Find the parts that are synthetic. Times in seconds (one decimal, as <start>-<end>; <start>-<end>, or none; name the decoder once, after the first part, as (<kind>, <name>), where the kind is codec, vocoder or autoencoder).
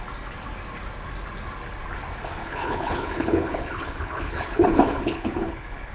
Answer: 2.4-5.9 (codec, HILCodec)